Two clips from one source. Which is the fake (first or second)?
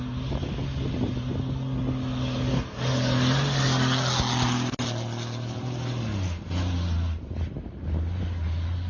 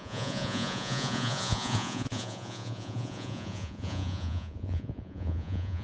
second